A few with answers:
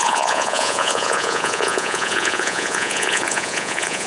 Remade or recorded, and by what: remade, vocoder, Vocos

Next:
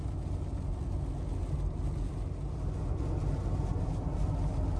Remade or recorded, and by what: recorded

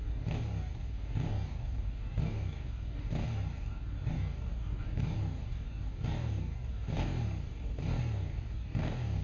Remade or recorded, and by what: remade, codec, DAC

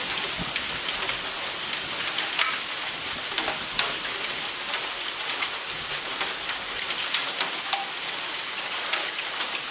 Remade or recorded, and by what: recorded